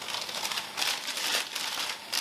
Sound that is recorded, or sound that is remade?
recorded